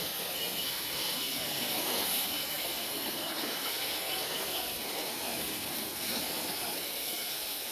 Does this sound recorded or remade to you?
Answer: remade